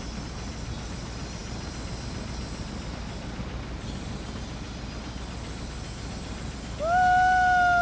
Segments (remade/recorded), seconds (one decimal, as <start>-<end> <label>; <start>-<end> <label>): 0.0-7.8 recorded